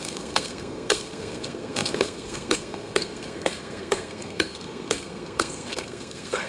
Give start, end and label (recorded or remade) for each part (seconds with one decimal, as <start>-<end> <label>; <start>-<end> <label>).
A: 0.0-6.5 remade